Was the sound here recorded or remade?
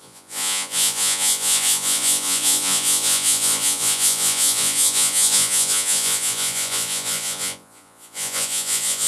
remade